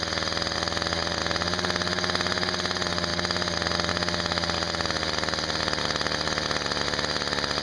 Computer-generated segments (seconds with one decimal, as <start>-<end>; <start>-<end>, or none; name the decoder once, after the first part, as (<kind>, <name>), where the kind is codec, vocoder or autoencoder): none